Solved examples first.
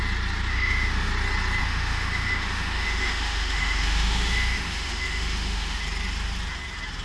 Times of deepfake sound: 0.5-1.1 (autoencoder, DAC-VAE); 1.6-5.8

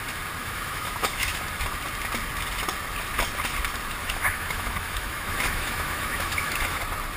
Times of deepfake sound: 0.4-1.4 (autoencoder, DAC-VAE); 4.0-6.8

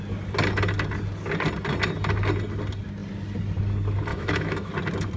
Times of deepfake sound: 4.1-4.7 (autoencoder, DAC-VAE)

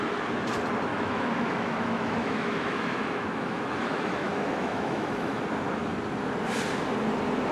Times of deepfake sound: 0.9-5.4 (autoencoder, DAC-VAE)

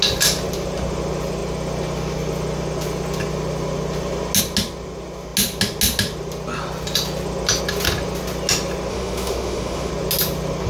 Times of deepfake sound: 8.9-9.9 (autoencoder, DAC-VAE)

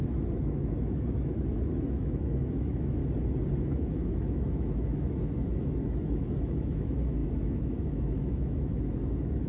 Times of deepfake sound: 0.0-3.0 (autoencoder, DAC-VAE); 3.6-9.5